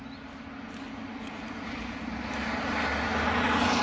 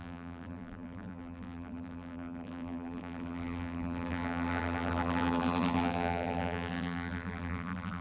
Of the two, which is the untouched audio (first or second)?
first